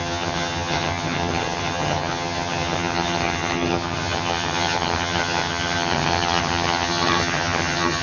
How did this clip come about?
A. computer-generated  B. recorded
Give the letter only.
A